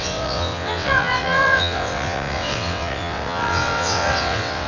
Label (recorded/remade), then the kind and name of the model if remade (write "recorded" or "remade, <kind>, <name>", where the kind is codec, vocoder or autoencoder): remade, vocoder, WaveNeXt